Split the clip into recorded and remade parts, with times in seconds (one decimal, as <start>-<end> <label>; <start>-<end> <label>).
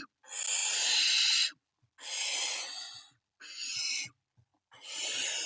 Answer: 0.0-5.5 recorded